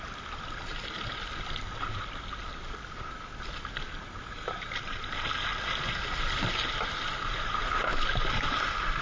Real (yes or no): yes